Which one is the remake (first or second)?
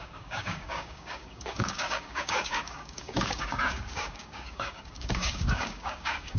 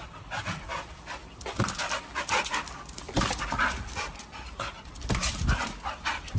first